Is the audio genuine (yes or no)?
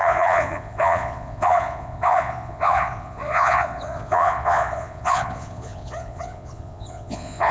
no